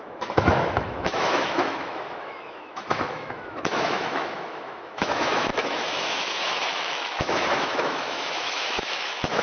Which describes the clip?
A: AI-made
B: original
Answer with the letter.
A